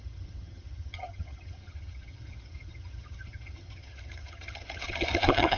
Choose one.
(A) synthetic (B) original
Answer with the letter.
A